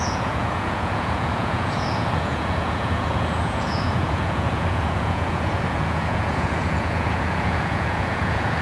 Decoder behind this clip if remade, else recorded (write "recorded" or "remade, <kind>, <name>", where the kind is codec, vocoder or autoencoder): remade, vocoder, Vocos